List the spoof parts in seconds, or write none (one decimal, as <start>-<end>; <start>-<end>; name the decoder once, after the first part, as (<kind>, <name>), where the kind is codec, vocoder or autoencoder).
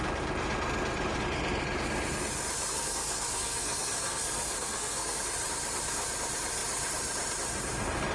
2.7-5.2 (codec, SNAC)